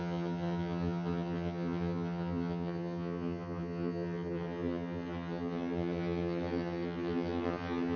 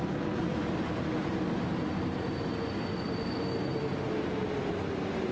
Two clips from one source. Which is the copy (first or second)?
first